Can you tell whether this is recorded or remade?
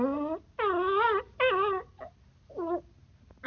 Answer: recorded